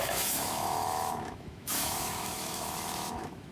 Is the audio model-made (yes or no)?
yes